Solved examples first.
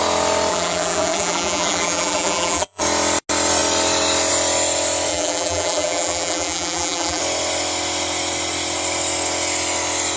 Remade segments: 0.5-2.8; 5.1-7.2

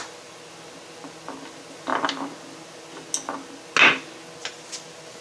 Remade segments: none